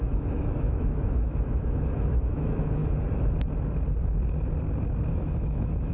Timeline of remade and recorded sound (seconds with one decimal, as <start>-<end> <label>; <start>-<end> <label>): 0.0-2.8 remade; 2.8-5.1 recorded; 5.1-5.9 remade